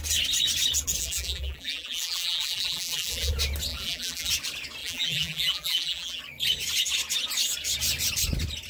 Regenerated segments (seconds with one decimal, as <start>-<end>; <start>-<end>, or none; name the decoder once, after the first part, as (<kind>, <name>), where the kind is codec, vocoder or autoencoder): 1.0-3.3 (vocoder, BigVGAN v2); 3.7-4.3; 4.8-6.2